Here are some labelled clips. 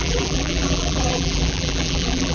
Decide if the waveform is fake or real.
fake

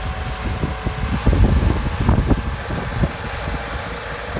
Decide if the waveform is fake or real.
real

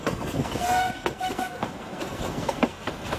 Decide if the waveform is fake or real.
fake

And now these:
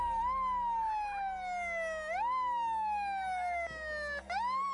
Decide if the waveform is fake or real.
real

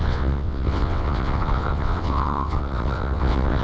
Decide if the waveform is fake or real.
fake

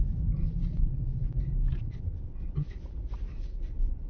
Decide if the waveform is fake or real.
real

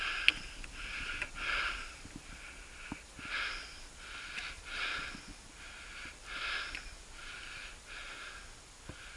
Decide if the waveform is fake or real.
real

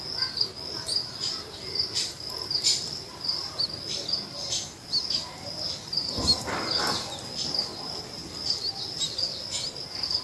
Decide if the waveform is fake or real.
real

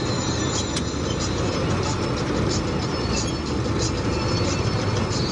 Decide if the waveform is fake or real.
real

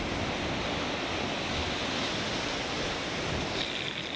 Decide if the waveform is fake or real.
real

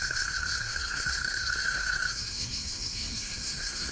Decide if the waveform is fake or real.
fake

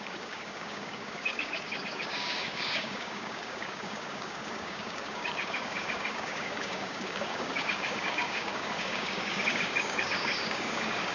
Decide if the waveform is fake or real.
fake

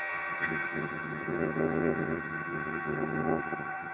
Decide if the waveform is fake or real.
fake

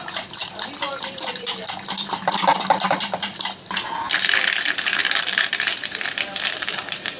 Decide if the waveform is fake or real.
fake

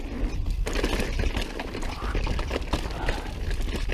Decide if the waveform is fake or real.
real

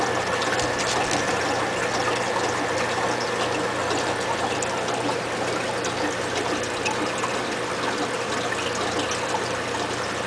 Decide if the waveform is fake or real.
real